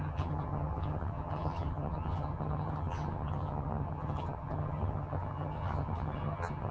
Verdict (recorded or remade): remade